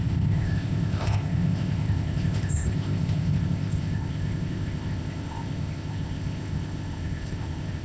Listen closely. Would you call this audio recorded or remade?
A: remade